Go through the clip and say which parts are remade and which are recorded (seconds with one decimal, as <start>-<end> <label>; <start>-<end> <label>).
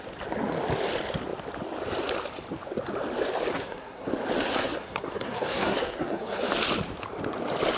0.0-3.5 recorded; 3.5-4.1 remade; 4.1-4.5 recorded; 4.5-6.4 remade; 6.4-7.8 recorded